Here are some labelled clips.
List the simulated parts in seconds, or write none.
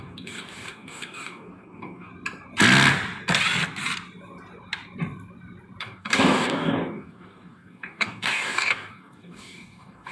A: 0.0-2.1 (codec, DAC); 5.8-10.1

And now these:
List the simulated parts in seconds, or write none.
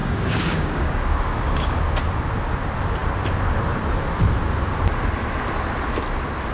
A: 0.0-1.8 (codec, DAC)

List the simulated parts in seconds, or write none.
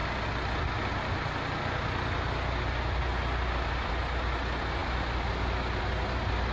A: none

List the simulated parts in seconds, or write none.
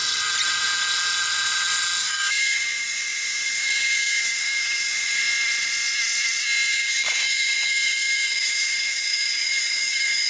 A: 2.0-5.2 (codec, DAC); 6.7-10.3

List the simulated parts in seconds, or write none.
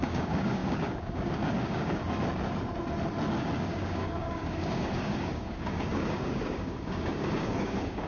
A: 0.0-2.0 (codec, DAC); 3.6-8.1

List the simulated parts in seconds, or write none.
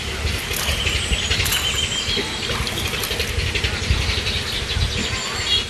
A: none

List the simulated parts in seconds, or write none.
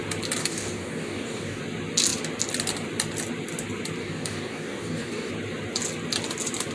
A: 0.4-1.6 (codec, DAC); 4.0-5.3